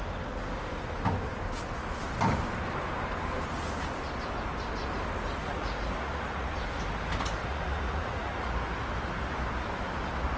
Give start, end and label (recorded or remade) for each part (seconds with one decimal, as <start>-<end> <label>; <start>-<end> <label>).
0.0-5.4 recorded; 5.4-6.6 remade; 6.6-7.4 recorded; 7.4-8.5 remade; 8.5-10.4 recorded